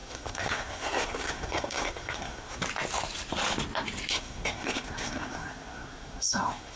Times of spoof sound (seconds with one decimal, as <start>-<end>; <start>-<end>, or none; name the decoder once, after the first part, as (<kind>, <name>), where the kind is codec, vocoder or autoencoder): 0.0-2.6 (codec, SNAC); 4.1-6.8